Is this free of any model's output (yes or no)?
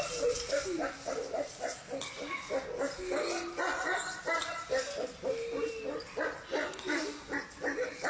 yes